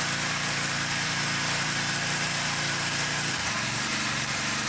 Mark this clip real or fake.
fake